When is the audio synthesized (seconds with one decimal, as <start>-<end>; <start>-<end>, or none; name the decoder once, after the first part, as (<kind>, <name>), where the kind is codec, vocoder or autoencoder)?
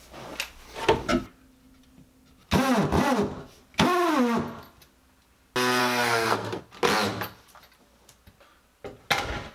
5.8-6.6 (codec, SNAC)